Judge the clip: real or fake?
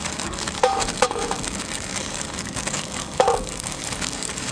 fake